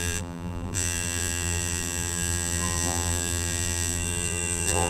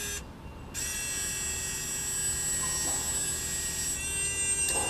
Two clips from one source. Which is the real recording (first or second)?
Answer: second